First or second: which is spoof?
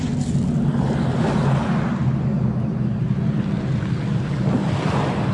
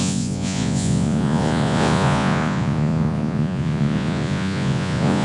second